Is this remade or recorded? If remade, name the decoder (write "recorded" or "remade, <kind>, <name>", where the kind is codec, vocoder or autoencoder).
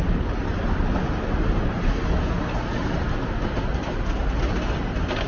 recorded